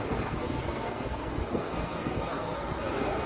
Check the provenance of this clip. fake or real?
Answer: fake